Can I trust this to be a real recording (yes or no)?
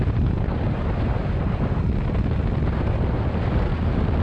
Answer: yes